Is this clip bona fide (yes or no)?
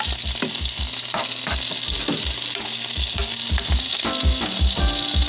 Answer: yes